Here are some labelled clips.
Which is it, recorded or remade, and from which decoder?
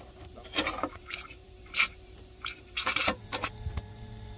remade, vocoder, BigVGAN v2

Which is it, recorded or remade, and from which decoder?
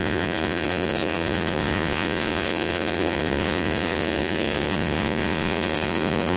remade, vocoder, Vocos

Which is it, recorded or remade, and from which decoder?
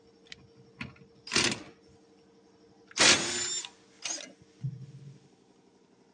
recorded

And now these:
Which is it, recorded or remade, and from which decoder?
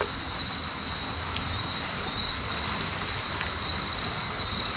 recorded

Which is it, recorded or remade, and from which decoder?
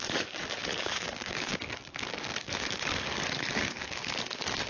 remade, codec, DAC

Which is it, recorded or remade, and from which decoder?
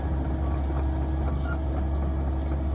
recorded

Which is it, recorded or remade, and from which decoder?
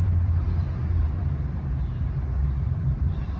remade, vocoder, BigVGAN v2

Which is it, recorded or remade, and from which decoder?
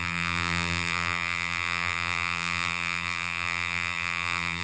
remade, vocoder, BigVGAN v2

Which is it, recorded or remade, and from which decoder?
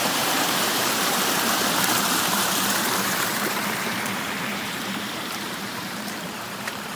remade, vocoder, BigVGAN v2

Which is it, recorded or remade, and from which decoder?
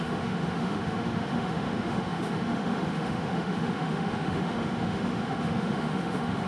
remade, autoencoder, DAC-VAE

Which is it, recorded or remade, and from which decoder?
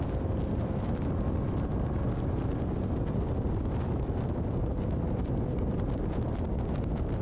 recorded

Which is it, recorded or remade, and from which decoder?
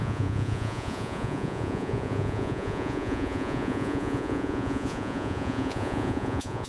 remade, vocoder, Vocos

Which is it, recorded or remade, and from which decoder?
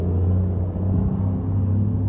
recorded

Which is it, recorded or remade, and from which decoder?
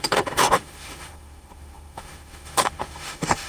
remade, autoencoder, DAC-VAE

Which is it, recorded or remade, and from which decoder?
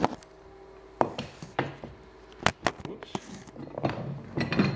recorded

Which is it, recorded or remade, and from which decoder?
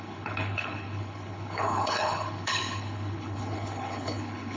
remade, codec, HILCodec